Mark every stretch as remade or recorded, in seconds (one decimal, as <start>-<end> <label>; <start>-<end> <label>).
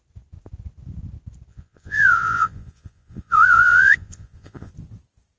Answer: 0.0-1.5 recorded; 1.5-4.7 remade; 4.7-5.4 recorded